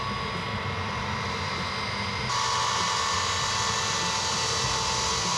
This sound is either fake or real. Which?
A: real